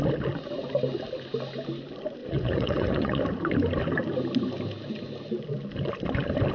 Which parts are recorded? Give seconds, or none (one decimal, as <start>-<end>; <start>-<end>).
0.0-2.2; 3.2-6.5